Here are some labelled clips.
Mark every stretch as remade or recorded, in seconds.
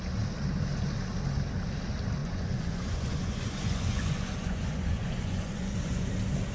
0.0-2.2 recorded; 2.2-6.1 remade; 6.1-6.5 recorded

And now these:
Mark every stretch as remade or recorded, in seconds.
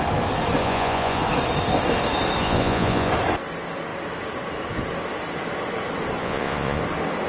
0.0-0.6 recorded; 0.6-1.2 remade; 1.2-2.4 recorded; 2.4-3.1 remade; 3.1-6.2 recorded; 6.2-6.8 remade; 6.8-7.3 recorded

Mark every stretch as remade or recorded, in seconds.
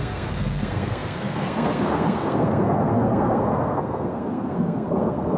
0.0-5.4 remade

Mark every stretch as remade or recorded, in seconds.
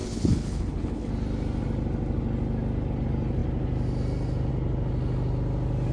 0.0-1.1 remade; 1.1-5.9 recorded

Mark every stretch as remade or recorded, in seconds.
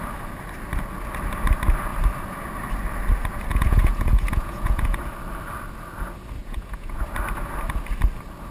0.0-3.5 recorded; 3.5-5.0 remade; 5.0-6.4 recorded; 6.4-7.0 remade; 7.0-8.5 recorded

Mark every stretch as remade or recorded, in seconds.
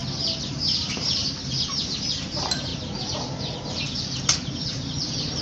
0.0-5.4 recorded